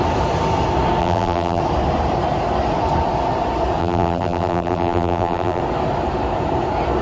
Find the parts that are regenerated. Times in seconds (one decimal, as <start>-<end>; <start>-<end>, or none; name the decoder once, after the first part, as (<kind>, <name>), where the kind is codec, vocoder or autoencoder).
1.0-1.6 (vocoder, BigVGAN v2); 3.8-5.6